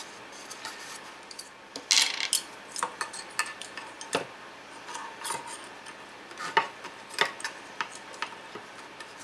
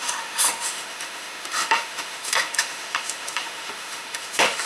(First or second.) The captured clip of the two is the first